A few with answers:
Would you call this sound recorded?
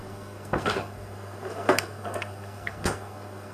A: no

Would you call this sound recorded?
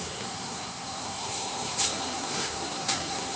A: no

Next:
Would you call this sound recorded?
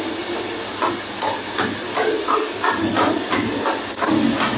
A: yes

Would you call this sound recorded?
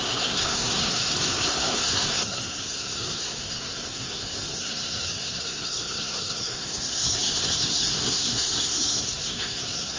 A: no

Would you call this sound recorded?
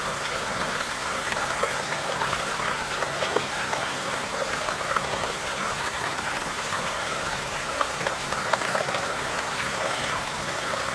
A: no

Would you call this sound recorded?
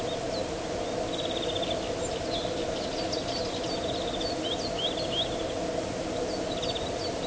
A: yes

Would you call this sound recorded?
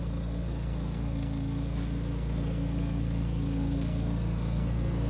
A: no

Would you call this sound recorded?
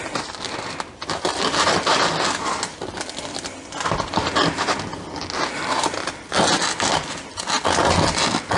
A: yes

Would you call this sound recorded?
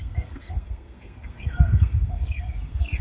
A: no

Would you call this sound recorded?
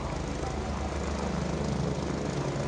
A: yes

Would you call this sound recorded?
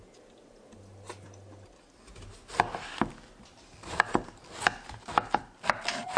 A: yes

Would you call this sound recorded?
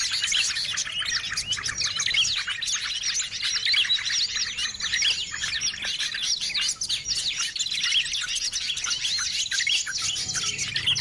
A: yes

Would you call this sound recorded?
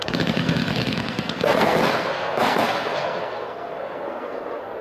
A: no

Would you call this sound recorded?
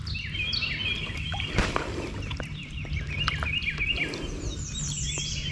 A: yes